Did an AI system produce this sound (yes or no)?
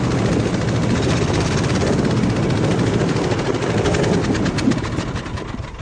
no